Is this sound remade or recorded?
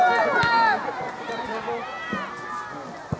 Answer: recorded